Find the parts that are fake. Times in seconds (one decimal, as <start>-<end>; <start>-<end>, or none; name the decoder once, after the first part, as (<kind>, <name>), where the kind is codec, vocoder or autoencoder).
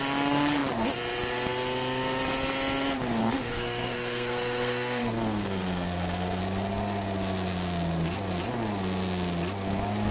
3.2-6.4 (codec, SNAC)